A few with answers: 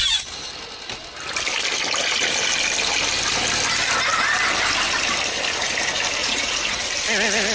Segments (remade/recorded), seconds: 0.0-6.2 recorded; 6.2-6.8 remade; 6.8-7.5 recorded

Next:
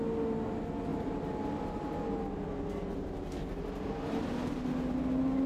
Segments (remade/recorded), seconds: 0.0-5.5 recorded

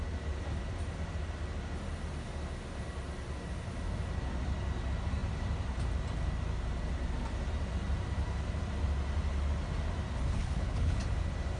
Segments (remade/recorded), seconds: 0.0-10.4 recorded; 10.4-11.0 remade; 11.0-11.6 recorded